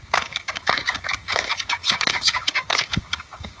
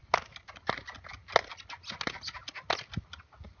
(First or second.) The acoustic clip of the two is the second